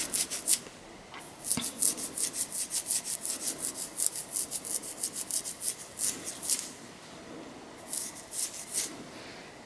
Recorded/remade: recorded